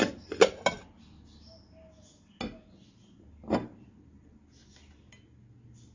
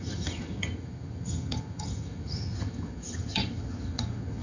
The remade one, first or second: second